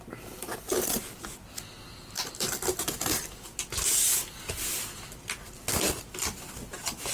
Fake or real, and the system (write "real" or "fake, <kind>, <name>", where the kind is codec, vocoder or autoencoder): real